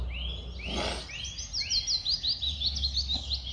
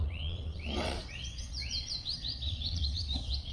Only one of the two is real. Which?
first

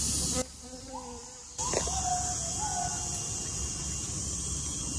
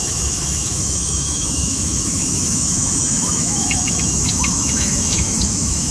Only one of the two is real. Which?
first